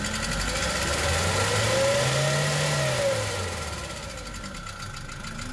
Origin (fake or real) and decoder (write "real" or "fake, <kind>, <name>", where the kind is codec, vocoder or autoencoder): real